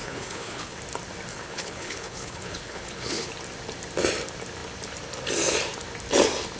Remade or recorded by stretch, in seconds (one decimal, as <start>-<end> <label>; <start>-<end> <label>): 0.0-0.8 remade; 0.8-1.3 recorded; 1.3-3.3 remade; 3.3-6.6 recorded